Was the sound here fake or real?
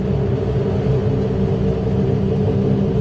real